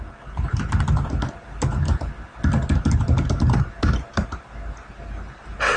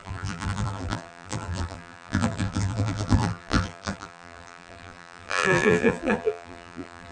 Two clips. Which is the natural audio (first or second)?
first